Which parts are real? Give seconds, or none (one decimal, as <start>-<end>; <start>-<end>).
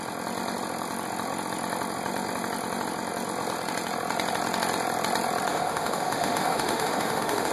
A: 0.0-5.5